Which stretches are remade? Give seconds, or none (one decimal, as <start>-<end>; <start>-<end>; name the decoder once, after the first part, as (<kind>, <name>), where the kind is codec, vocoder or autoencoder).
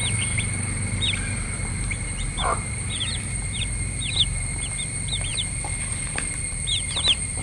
0.0-7.4 (vocoder, BigVGAN v2)